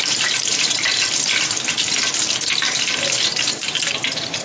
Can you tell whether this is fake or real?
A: fake